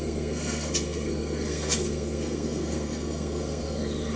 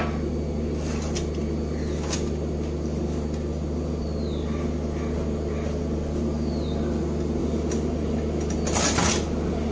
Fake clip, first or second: first